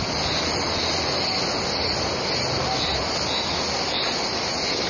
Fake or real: real